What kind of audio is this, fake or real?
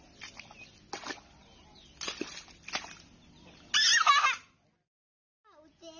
real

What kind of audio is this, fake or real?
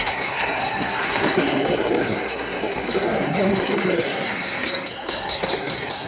fake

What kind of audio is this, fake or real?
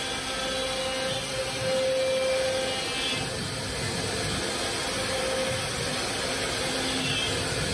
real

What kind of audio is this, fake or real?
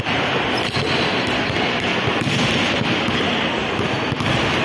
real